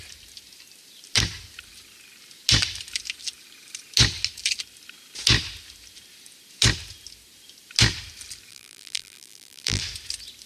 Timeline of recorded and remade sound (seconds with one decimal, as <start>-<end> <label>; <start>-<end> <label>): 0.0-8.5 recorded; 8.5-9.8 remade; 9.8-10.5 recorded